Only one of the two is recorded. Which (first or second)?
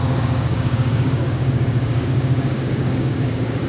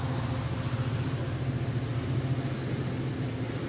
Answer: second